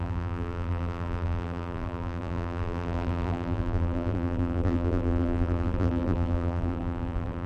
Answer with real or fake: fake